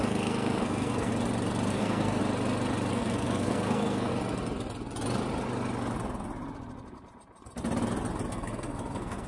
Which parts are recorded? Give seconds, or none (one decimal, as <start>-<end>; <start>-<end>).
1.1-1.7; 2.2-2.9; 4.1-8.3